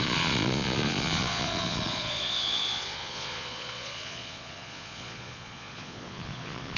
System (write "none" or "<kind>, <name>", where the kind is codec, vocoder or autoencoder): vocoder, Vocos